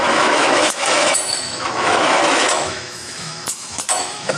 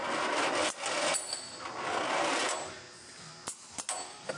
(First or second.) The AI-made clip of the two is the first